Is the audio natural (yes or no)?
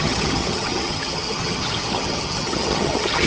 no